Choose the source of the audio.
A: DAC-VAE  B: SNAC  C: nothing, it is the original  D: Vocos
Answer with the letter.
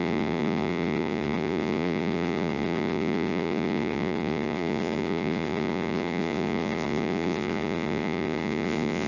D